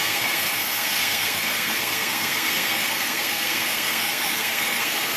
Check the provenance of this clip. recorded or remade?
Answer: remade